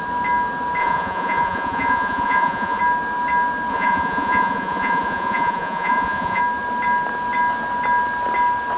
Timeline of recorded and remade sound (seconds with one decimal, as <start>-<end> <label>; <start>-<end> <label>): 0.0-0.8 recorded; 0.8-2.8 remade; 2.8-3.7 recorded; 3.7-6.4 remade; 6.4-8.8 recorded